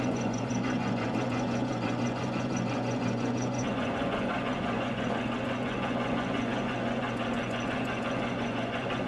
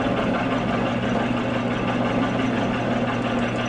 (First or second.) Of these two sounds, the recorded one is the second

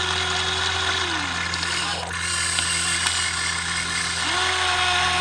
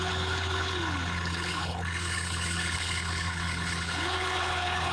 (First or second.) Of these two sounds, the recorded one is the first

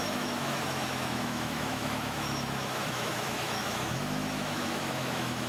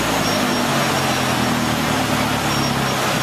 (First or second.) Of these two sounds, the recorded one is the second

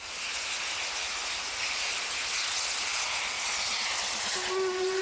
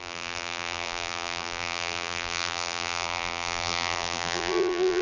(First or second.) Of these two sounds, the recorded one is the first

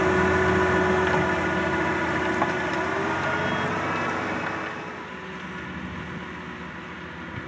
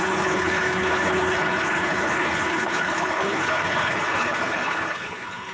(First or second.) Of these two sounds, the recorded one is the first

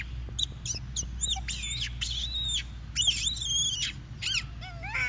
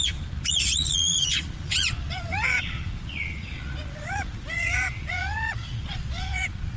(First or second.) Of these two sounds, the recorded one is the first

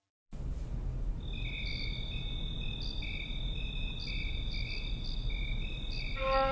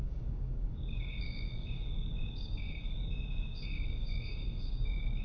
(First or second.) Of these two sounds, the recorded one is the first